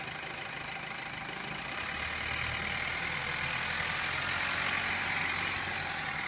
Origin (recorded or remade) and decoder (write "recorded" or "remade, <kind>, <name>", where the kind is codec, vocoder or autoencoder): recorded